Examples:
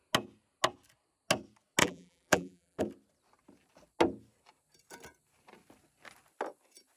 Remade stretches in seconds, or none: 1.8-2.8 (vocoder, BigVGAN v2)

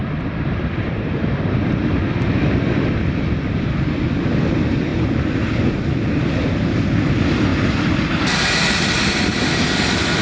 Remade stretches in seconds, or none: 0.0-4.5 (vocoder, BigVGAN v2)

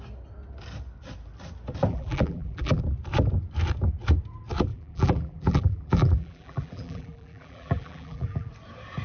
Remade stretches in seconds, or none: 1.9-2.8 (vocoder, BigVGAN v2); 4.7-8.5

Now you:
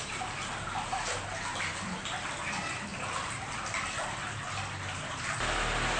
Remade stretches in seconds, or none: none

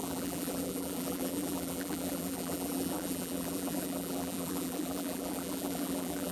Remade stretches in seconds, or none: 0.0-6.3 (vocoder, BigVGAN v2)